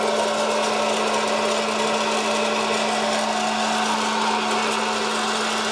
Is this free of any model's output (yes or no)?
yes